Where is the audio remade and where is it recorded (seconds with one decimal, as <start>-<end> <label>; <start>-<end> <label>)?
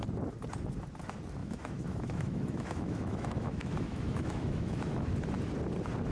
0.0-1.4 recorded; 1.4-5.1 remade; 5.1-6.1 recorded